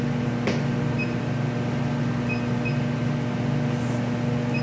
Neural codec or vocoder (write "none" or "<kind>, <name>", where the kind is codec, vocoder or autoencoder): none